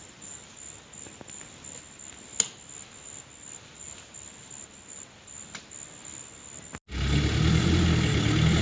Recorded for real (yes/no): yes